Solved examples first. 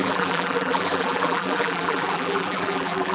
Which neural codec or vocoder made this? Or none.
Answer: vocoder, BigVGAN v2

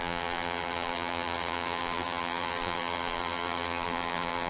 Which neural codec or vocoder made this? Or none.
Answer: vocoder, BigVGAN v2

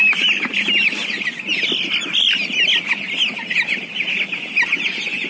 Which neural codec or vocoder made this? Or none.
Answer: none